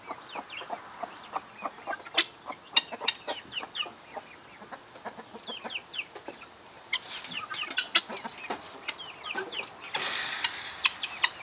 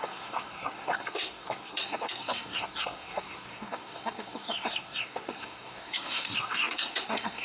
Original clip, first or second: first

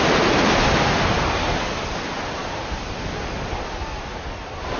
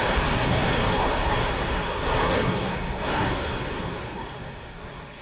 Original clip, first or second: first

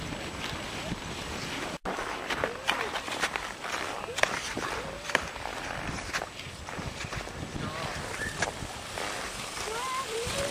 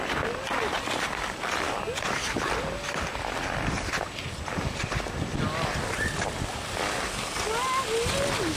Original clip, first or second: second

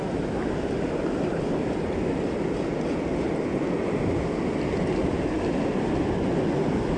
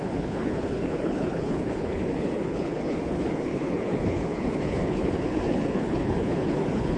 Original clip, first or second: first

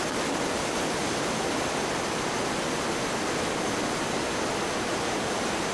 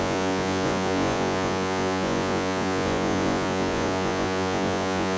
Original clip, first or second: first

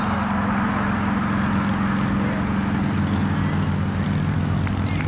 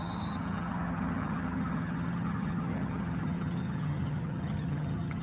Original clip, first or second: first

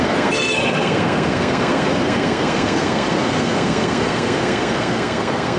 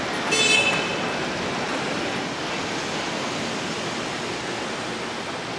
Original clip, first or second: second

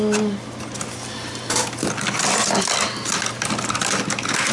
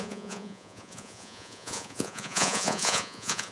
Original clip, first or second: first